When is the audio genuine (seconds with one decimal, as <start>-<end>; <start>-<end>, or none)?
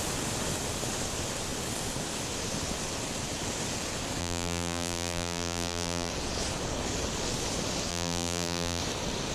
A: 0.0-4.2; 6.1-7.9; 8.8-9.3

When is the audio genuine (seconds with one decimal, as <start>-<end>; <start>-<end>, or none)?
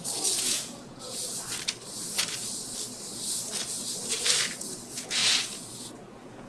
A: 1.2-4.6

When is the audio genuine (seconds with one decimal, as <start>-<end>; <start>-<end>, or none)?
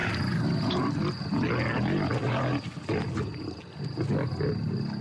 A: 0.0-5.0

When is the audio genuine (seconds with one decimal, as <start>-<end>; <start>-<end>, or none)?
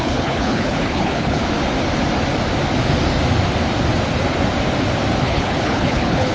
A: 1.4-5.2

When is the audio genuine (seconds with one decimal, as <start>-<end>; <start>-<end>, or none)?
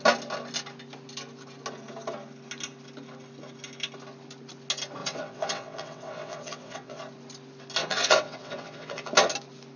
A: 0.0-5.0; 7.0-7.8; 9.1-9.8